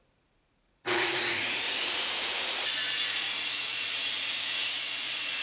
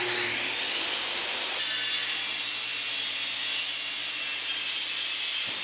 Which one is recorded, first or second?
second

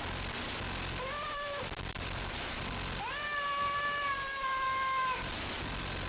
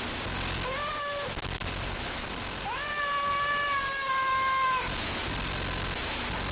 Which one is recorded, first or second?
second